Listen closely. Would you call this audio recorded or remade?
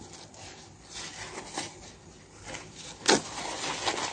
recorded